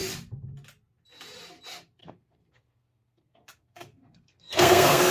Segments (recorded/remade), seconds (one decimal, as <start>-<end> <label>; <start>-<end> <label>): 0.0-2.0 recorded; 2.0-5.1 remade